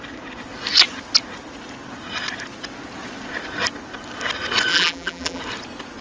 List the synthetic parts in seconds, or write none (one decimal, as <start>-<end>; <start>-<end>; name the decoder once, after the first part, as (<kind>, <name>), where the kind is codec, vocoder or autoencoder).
4.7-5.4 (vocoder, BigVGAN v2)